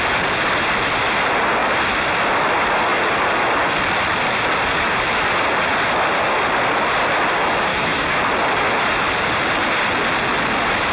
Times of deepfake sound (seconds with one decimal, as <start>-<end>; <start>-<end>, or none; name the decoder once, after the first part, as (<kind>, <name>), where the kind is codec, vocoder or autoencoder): 7.7-8.2 (autoencoder, DAC-VAE)